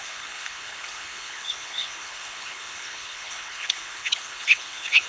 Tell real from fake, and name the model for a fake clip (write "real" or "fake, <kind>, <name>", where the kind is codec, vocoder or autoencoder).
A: fake, codec, HILCodec